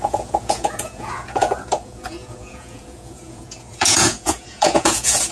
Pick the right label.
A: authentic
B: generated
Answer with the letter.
B